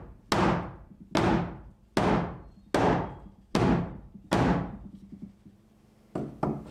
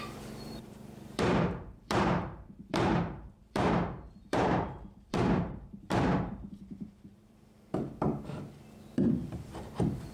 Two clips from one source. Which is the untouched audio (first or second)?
first